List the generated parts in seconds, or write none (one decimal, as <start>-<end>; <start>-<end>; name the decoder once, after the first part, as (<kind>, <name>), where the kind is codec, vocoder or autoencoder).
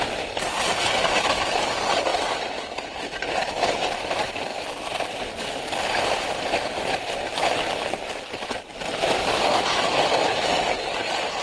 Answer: 4.5-5.1 (vocoder, BigVGAN v2); 8.7-9.3